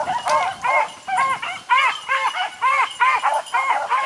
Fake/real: real